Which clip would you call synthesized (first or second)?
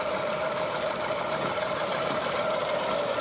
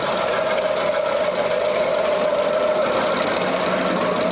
first